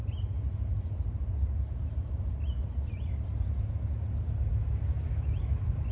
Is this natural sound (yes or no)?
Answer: yes